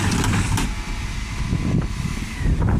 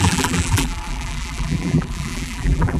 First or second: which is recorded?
first